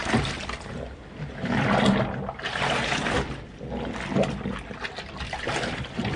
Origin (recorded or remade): recorded